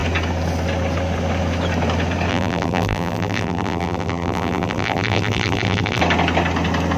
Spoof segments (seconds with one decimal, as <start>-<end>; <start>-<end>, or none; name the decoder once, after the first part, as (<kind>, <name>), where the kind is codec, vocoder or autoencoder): 2.3-6.0 (vocoder, BigVGAN v2)